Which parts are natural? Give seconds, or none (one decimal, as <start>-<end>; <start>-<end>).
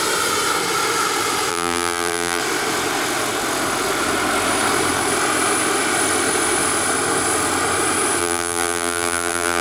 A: 0.0-1.5; 2.4-8.2